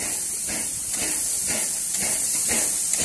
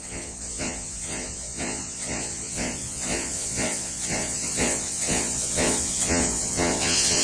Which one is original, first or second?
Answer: first